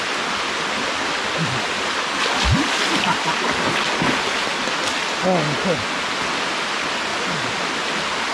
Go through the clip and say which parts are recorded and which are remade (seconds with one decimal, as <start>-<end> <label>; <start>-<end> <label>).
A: 0.0-8.3 recorded